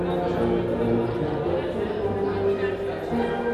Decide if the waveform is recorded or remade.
recorded